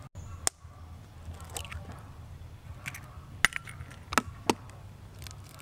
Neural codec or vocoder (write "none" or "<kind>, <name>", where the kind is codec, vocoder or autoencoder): none